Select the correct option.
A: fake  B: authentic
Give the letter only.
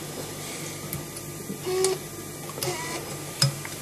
B